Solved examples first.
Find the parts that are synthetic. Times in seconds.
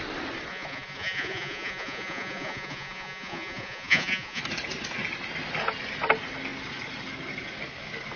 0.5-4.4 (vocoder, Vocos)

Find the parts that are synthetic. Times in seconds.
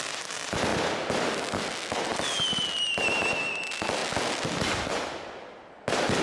none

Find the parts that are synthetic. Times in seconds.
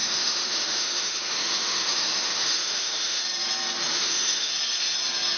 0.0-3.2 (autoencoder, DAC-VAE); 3.9-4.5